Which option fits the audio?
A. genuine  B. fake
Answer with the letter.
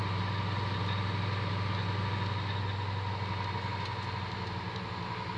A